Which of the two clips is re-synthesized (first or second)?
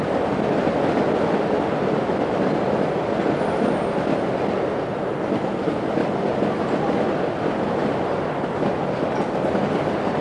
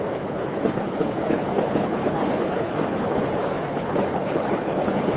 second